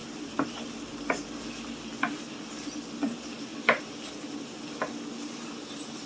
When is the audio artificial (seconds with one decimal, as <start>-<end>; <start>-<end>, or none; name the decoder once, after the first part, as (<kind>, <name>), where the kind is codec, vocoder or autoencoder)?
none

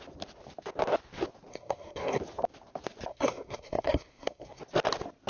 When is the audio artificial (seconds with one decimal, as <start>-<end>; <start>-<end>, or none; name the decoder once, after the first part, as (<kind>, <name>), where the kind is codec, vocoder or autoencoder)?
1.5-2.2 (codec, SNAC); 3.1-4.6

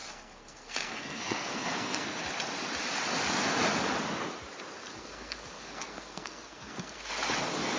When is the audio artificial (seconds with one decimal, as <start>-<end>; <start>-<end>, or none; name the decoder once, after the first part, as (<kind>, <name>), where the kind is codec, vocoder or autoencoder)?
0.0-2.2 (codec, SNAC); 4.9-7.1